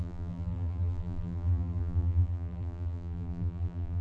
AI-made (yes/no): yes